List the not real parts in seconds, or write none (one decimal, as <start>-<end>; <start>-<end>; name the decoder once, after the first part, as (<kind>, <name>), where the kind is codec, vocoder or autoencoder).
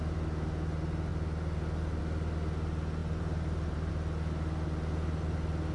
3.0-3.9 (vocoder, BigVGAN v2)